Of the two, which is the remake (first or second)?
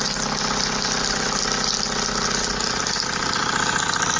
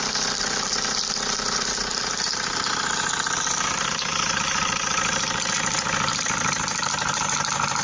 second